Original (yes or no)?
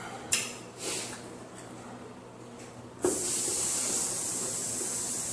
no